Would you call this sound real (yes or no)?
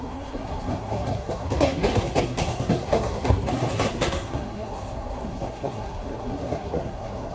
no